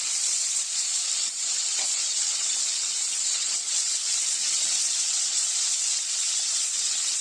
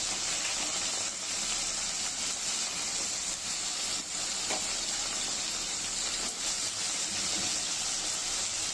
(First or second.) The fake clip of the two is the first